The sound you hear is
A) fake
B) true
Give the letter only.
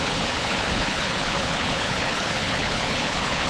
A